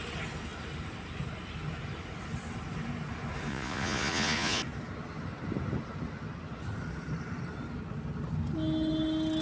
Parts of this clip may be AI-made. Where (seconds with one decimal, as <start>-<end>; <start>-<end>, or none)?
3.5-4.6